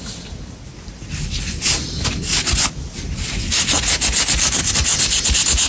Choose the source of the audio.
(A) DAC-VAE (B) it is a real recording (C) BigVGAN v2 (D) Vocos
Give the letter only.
B